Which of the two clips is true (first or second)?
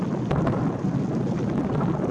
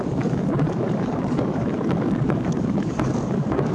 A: first